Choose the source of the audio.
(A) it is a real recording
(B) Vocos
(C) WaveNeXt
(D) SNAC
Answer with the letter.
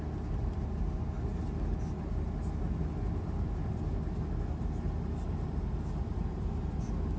A